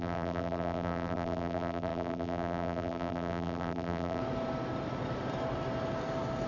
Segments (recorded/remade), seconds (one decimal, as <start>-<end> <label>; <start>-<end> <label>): 0.0-4.2 remade; 4.2-6.5 recorded